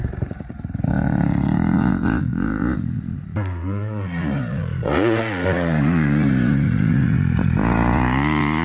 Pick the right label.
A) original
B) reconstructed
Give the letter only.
B